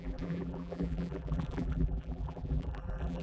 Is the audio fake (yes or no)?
yes